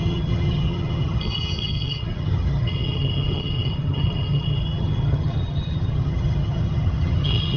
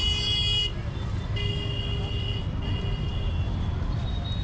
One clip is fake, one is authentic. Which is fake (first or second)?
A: first